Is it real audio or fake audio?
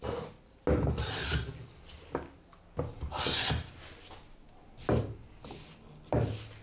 real